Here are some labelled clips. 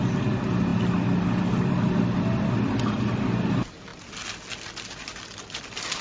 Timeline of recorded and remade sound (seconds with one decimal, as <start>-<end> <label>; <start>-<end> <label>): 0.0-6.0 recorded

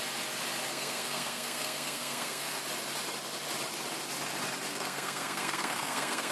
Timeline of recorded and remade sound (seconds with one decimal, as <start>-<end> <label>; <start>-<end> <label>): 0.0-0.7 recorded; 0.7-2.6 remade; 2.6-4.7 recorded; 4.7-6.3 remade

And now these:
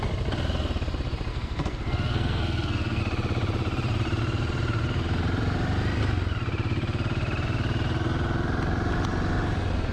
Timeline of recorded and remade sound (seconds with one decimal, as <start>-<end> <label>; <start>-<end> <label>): 0.0-1.3 recorded; 1.3-3.0 remade; 3.0-9.9 recorded

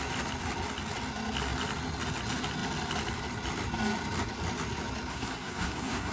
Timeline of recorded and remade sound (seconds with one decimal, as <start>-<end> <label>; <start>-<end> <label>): 0.0-5.1 recorded; 5.1-6.1 remade